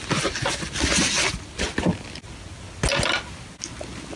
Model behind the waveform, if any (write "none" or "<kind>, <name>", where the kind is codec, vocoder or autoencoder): none